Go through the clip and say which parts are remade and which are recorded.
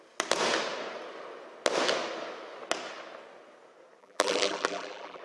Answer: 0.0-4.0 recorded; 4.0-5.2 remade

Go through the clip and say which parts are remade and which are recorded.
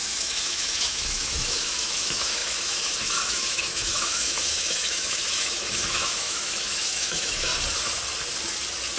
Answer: 0.0-7.5 remade; 7.5-9.0 recorded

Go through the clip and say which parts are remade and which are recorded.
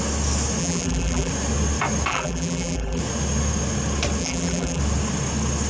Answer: 0.0-0.6 recorded; 0.6-1.3 remade; 1.3-2.1 recorded; 2.1-3.0 remade; 3.0-4.2 recorded; 4.2-4.8 remade; 4.8-5.7 recorded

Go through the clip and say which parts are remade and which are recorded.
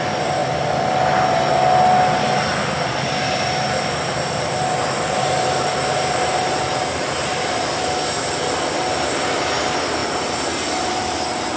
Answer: 0.0-2.5 recorded; 2.5-7.8 remade; 7.8-10.0 recorded; 10.0-11.0 remade; 11.0-11.6 recorded